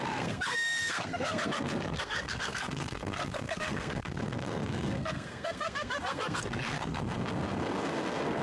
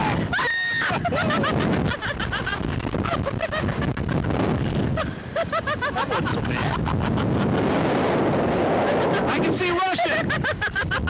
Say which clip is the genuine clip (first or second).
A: second